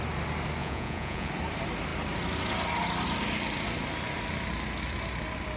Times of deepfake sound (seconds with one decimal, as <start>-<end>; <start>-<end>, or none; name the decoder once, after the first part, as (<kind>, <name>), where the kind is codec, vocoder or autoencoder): 0.6-1.3 (vocoder, Vocos)